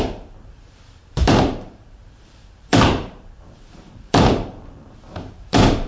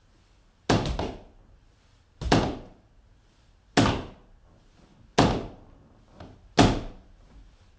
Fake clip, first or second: first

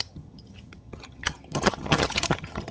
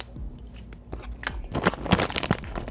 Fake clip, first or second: first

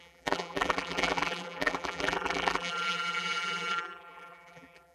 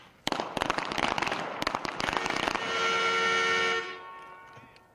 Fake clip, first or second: first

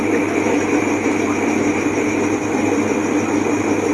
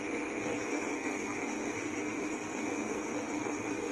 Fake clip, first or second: second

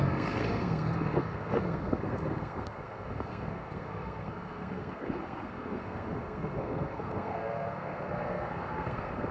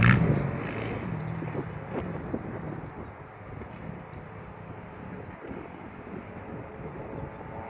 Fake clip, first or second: first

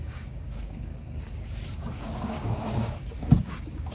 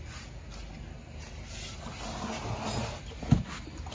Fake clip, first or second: first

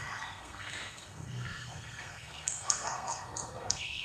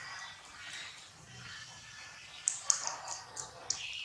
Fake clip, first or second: first